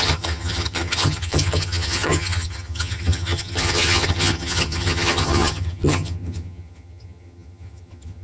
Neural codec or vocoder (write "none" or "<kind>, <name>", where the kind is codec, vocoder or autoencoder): vocoder, HiFi-GAN